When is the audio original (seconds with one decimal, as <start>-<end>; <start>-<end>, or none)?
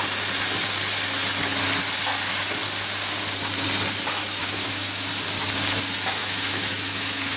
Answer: 0.0-4.4; 5.1-6.2